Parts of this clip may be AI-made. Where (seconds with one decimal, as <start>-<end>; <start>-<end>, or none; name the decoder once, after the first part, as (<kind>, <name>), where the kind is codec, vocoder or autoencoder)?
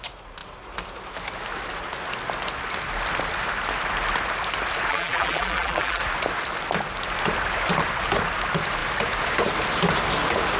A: 4.9-6.0 (vocoder, BigVGAN v2)